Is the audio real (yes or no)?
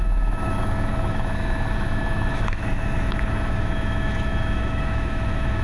no